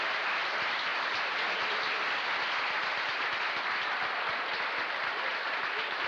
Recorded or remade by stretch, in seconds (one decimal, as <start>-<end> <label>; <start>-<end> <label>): 0.0-6.1 recorded